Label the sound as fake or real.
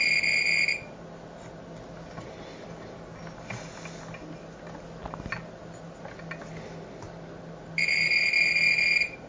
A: real